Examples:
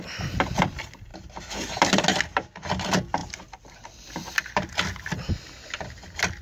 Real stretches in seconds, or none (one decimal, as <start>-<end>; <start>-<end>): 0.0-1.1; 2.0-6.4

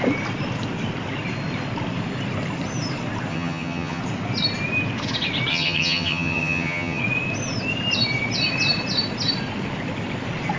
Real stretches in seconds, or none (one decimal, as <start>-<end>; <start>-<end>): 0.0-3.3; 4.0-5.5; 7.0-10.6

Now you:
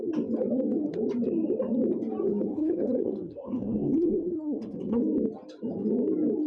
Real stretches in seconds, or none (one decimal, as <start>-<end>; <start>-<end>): 0.0-2.5; 5.0-6.5

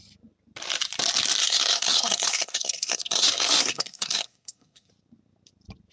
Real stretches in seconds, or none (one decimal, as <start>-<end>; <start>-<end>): 0.0-1.4; 4.9-5.9

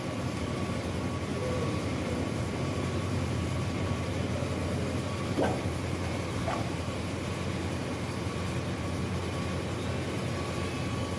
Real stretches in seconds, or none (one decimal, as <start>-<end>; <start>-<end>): 0.0-1.3; 4.1-5.3; 6.9-11.2